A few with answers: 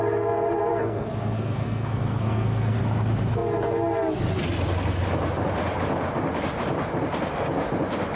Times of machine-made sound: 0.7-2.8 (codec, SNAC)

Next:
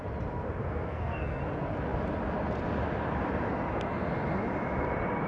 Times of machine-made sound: 0.6-1.4 (codec, SNAC)

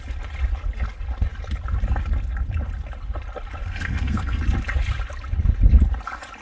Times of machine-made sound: 3.6-4.4 (codec, SNAC)

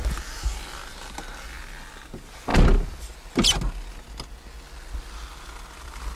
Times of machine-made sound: none

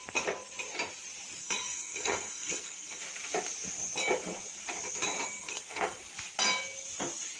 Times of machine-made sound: 1.4-3.0 (codec, SNAC); 5.4-6.0

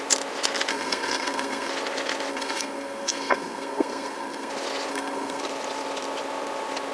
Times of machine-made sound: 0.7-1.7 (codec, SNAC); 2.3-4.5; 4.9-5.4